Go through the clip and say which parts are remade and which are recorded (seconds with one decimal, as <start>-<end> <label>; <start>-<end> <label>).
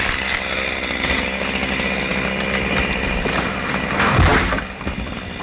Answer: 0.0-5.4 recorded